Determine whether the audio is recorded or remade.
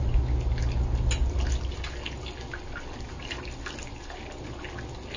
recorded